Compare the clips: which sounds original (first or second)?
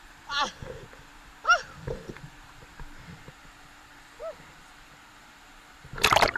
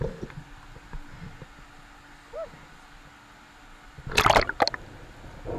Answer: second